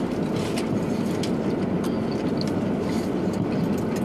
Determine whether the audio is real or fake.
real